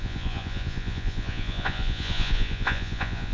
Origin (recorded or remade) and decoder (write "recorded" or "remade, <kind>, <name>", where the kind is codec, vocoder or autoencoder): remade, vocoder, Vocos